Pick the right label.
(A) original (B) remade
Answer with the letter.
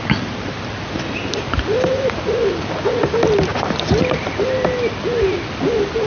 A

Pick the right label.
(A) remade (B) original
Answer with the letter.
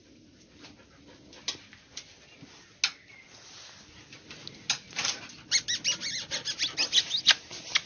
B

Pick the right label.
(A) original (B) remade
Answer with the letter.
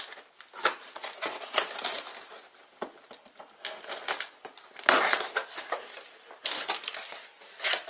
A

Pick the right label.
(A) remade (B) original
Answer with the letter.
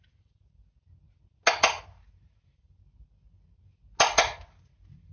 B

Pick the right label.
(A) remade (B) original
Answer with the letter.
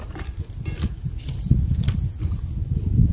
B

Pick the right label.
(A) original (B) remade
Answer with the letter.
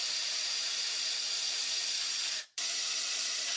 B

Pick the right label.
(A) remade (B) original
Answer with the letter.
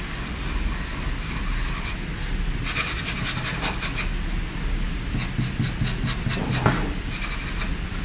B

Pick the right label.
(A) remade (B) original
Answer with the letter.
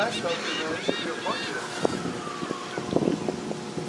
B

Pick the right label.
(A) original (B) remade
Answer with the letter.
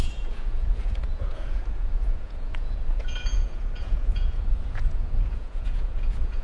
B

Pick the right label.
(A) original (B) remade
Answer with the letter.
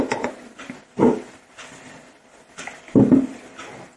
A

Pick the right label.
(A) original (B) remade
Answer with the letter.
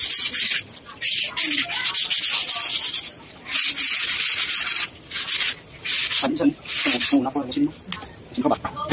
A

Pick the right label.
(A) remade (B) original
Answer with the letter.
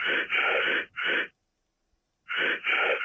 B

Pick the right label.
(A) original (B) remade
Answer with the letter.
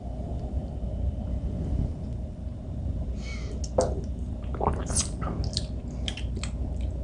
A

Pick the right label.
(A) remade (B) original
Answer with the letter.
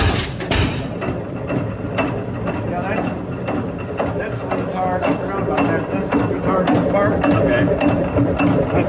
B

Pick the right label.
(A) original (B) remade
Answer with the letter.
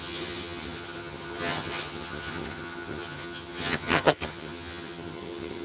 B